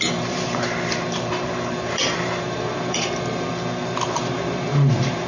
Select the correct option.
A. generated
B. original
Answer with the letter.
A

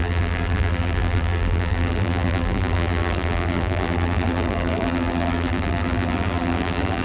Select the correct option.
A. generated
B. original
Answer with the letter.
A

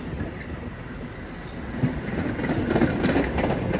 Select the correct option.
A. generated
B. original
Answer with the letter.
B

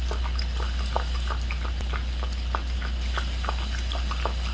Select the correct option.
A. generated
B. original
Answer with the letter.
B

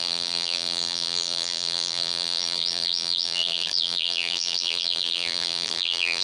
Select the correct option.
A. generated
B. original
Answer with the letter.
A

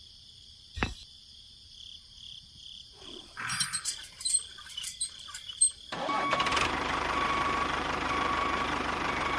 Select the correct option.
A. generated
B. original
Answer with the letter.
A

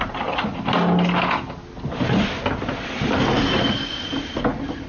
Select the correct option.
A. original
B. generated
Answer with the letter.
A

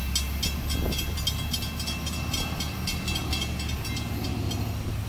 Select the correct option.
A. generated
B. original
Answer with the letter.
B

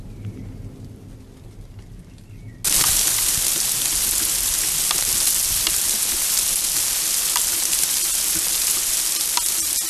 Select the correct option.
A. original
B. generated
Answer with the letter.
A